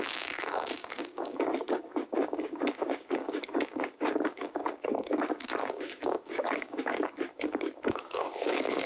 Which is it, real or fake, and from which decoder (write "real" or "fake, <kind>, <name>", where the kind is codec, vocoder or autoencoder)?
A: fake, codec, DAC